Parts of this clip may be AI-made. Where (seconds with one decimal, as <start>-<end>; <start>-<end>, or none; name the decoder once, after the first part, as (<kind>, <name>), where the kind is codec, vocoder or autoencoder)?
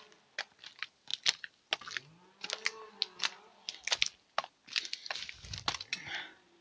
none